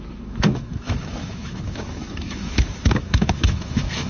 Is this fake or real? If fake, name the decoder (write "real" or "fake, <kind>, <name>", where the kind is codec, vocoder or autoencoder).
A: fake, autoencoder, DAC-VAE